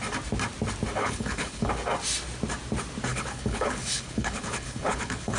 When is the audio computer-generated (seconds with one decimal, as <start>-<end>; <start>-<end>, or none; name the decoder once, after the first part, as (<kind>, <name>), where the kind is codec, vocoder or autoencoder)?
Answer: 1.0-1.7 (codec, HILCodec); 3.1-5.4